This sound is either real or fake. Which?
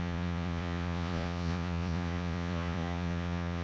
fake